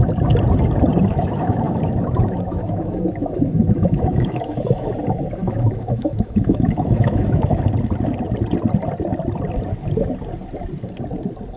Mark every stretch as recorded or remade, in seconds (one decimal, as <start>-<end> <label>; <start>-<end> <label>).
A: 0.0-1.1 recorded; 1.1-4.9 remade; 4.9-5.4 recorded; 5.4-7.6 remade; 7.6-11.6 recorded